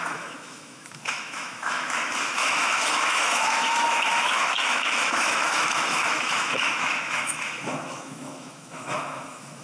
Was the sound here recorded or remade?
remade